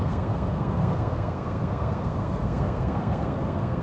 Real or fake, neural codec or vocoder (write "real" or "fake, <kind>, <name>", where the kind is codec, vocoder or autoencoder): fake, codec, SNAC